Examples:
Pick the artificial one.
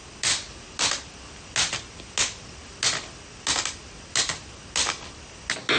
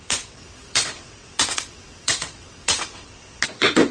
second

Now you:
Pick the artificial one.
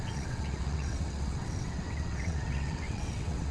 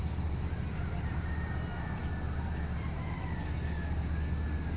first